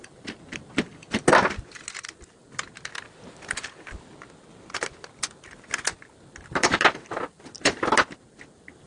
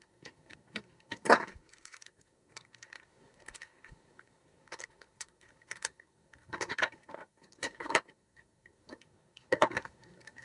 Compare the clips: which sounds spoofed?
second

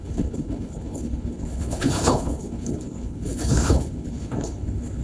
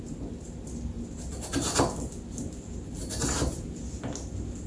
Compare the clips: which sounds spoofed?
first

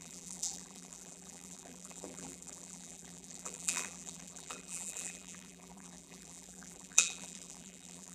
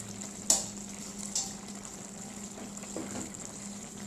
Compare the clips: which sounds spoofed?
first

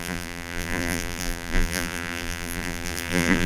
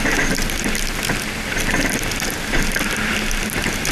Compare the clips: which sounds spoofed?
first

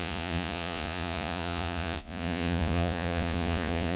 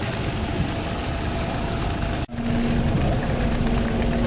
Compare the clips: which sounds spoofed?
first